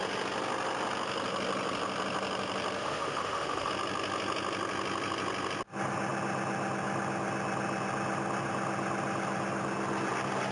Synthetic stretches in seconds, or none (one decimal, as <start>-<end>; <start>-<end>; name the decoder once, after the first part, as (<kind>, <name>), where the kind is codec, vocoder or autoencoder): 2.8-3.7 (autoencoder, DAC-VAE)